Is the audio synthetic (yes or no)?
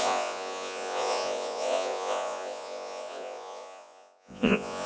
yes